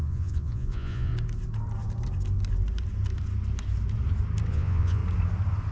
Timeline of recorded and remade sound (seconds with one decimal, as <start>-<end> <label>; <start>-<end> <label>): 0.0-1.1 remade; 1.1-4.5 recorded; 4.5-5.0 remade; 5.0-5.7 recorded